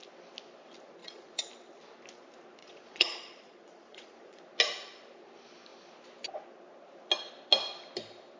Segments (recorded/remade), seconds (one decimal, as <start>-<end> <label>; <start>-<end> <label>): 0.0-1.0 recorded; 1.0-1.5 remade; 1.5-2.6 recorded; 2.6-4.4 remade; 4.4-8.4 recorded